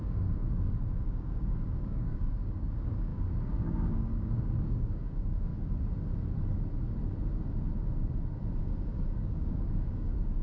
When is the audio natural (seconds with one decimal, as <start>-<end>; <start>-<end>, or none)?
5.5-8.6